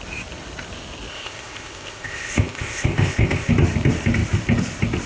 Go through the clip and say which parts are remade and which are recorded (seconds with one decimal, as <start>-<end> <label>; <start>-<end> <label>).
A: 0.0-1.1 recorded; 1.1-3.5 remade; 3.5-5.1 recorded